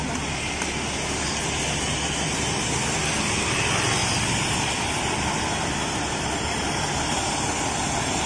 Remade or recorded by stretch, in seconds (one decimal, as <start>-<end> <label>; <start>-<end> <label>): 0.0-4.0 recorded; 4.0-7.3 remade; 7.3-8.3 recorded